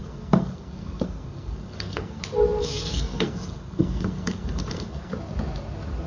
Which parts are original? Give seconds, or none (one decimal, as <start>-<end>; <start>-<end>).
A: 2.2-2.6; 5.1-6.1